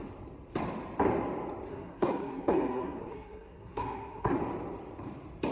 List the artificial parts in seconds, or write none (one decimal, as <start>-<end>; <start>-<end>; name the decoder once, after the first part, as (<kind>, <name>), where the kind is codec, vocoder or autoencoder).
1.7-4.4 (codec, SNAC)